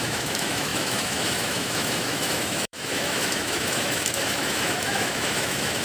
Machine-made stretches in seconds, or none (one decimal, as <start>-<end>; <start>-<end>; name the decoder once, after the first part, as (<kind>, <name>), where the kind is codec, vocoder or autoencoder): 0.0-5.8 (autoencoder, DAC-VAE)